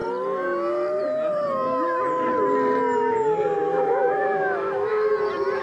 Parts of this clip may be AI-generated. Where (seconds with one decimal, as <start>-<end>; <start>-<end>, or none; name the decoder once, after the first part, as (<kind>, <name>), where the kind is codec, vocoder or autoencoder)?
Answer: 3.7-5.1 (autoencoder, DAC-VAE)